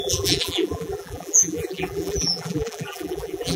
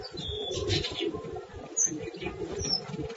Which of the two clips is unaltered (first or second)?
second